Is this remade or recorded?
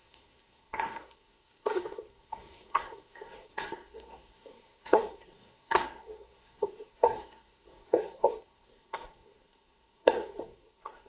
remade